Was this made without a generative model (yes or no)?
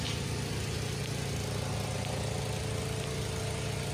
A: yes